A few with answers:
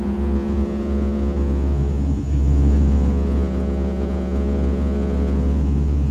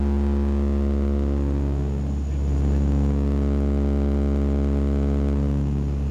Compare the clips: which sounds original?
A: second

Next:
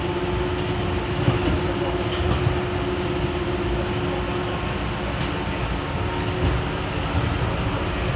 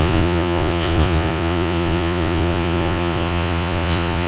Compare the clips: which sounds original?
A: first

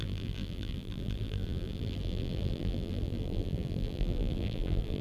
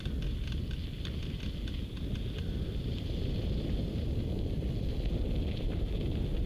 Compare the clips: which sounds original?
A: second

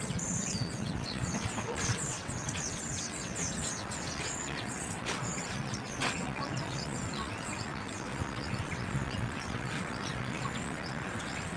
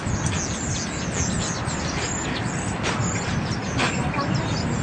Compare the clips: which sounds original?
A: second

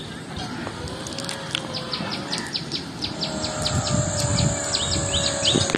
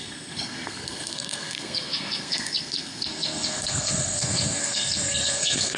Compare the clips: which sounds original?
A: first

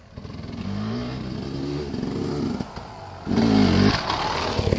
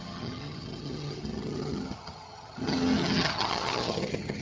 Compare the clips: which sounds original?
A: first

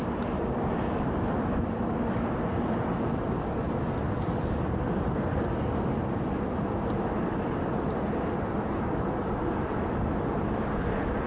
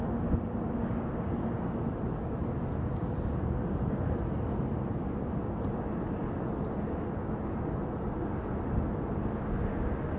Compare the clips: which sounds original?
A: second